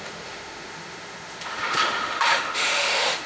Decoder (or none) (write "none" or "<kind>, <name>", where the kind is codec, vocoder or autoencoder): autoencoder, DAC-VAE